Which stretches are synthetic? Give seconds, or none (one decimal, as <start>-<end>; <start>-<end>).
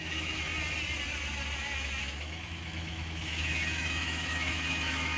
0.0-0.5; 2.0-5.2